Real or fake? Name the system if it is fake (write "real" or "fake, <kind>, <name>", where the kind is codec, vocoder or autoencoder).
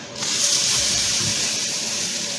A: fake, vocoder, BigVGAN v2